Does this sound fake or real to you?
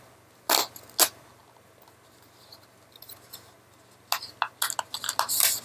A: real